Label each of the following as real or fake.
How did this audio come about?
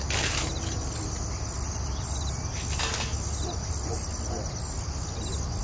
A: real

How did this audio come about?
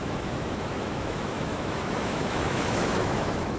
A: fake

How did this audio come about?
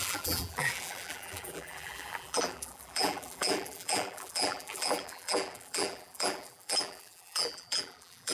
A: fake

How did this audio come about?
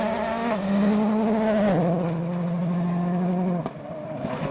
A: real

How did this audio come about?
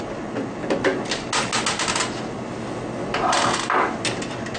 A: real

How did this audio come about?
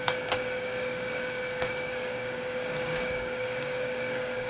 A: fake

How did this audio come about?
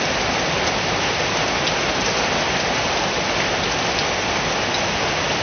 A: real